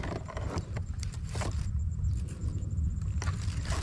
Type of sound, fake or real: fake